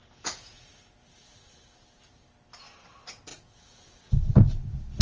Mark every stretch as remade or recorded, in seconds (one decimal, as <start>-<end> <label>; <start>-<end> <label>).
0.0-0.7 remade; 0.7-3.3 recorded; 3.3-4.3 remade; 4.3-5.0 recorded